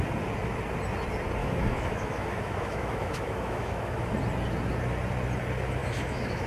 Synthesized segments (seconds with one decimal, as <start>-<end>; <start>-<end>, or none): 1.4-4.1; 5.8-6.5